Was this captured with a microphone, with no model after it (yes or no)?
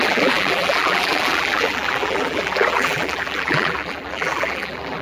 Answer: no